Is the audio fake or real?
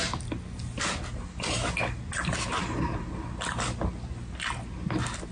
real